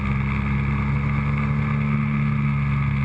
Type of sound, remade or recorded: recorded